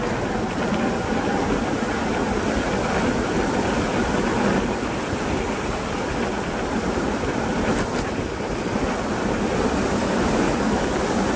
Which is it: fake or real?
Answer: real